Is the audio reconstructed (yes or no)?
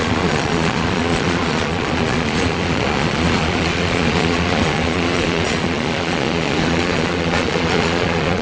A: yes